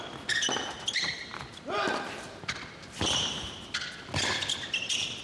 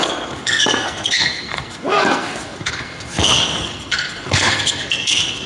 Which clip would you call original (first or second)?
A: first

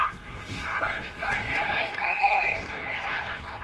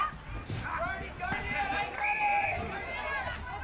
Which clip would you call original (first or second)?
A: second